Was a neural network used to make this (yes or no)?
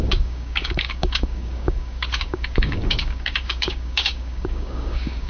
yes